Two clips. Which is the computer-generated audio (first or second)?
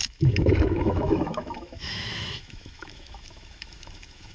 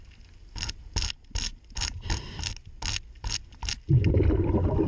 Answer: first